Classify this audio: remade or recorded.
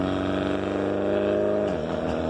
recorded